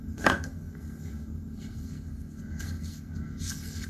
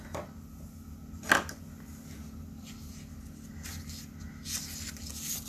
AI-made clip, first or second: first